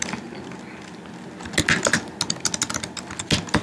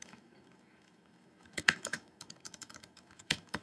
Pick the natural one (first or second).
first